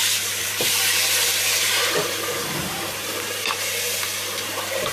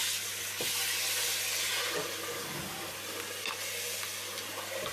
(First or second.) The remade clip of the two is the first